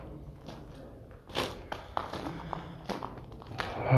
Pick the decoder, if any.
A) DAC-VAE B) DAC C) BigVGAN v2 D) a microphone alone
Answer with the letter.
D